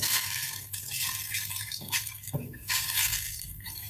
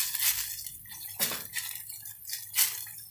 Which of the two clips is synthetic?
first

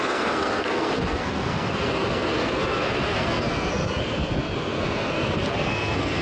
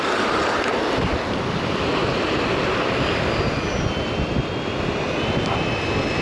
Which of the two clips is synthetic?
first